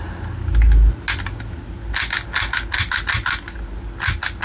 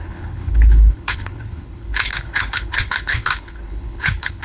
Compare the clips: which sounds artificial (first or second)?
second